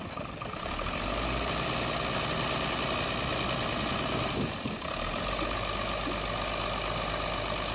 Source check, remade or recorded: recorded